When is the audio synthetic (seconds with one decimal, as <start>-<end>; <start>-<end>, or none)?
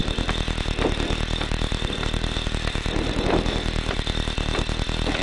none